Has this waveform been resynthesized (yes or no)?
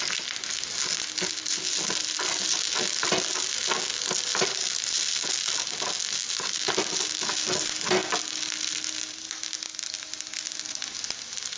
no